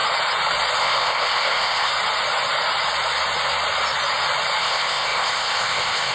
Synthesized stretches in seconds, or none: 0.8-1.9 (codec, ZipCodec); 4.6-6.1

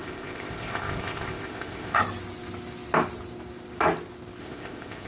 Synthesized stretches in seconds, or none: 0.0-2.0 (codec, ZipCodec); 4.4-5.1

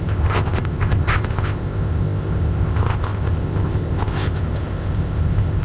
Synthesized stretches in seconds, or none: 0.0-5.6 (codec, ZipCodec)

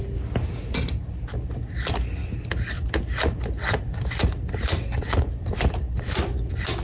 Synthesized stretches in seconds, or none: none

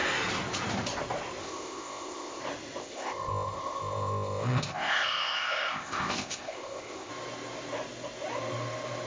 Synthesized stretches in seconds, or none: 1.4-2.4 (codec, ZipCodec); 2.8-7.1

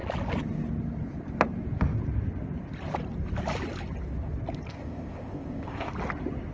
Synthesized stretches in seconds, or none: 4.7-5.9 (codec, ZipCodec)

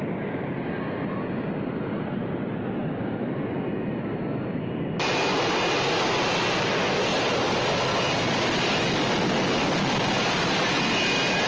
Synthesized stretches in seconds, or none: none